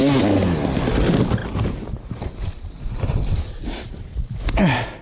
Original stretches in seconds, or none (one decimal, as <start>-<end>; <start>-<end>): 0.0-0.9